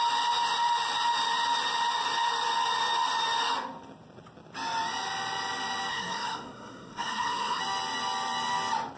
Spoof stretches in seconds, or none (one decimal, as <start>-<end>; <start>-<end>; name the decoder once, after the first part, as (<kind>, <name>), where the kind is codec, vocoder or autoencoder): 5.9-7.6 (codec, SNAC)

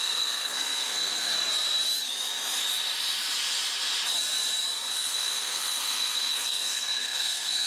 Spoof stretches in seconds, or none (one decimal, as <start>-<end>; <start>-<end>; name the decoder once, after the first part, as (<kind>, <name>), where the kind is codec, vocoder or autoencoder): 0.0-1.3 (codec, SNAC); 4.9-7.7

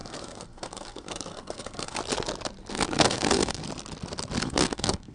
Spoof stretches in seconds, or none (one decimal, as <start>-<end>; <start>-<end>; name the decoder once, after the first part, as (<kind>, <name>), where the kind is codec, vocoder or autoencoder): 0.0-2.0 (codec, SNAC); 2.7-3.6; 4.4-5.1

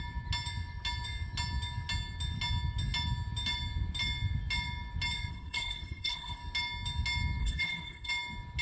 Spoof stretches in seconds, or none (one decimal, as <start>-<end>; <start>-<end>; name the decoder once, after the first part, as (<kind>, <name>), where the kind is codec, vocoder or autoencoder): 5.3-6.4 (codec, SNAC); 7.4-8.1

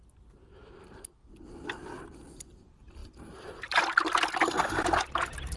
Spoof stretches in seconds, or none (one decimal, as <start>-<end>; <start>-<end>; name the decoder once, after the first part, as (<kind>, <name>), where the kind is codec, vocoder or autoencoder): none